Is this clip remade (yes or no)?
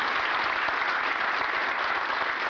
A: no